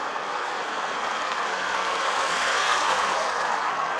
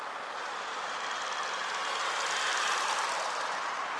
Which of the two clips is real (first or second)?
second